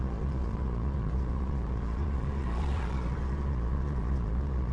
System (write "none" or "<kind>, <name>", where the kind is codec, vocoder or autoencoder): vocoder, Vocos